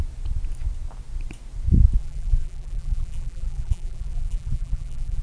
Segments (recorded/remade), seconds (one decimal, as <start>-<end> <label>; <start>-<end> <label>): 0.0-2.0 recorded; 2.0-5.2 remade